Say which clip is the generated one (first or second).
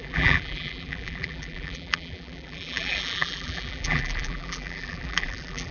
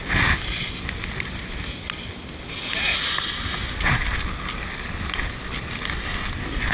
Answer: first